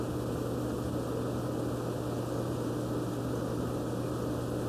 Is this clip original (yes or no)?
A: yes